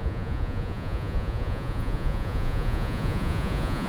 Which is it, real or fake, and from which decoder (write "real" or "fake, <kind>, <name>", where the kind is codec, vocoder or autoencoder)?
fake, vocoder, Vocos